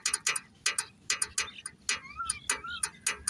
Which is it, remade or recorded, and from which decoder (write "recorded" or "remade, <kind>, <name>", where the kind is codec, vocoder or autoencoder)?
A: recorded